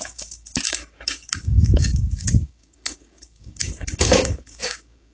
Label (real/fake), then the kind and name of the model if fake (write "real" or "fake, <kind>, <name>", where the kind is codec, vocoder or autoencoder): fake, codec, DAC